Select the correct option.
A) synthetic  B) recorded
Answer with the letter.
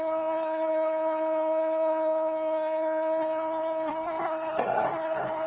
A